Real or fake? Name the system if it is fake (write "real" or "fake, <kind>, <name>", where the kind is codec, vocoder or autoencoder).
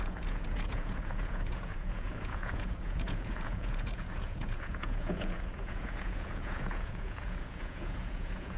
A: fake, vocoder, Vocos